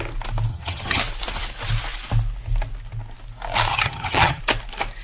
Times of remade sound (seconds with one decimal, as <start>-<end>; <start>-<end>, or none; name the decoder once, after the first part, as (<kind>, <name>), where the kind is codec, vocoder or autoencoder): 0.5-1.0 (vocoder, HiFi-GAN); 3.7-4.4